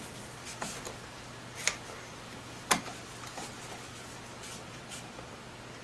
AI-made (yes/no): no